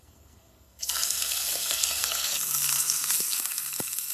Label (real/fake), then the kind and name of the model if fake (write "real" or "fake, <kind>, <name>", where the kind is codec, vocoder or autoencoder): fake, codec, SNAC